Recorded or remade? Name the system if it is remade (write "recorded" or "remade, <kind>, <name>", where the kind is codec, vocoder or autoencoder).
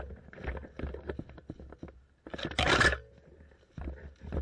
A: recorded